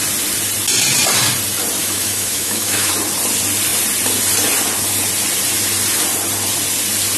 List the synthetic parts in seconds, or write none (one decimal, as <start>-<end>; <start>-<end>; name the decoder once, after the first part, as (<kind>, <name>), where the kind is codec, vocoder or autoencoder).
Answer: 1.8-2.9 (autoencoder, DAC-VAE)